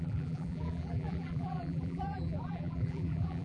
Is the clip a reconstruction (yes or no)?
yes